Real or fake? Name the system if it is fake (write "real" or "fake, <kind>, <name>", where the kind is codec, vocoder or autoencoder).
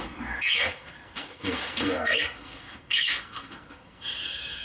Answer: fake, codec, SNAC